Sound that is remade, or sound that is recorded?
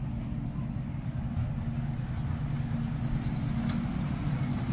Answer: recorded